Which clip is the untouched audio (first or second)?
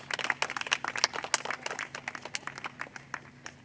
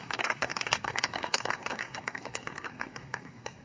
first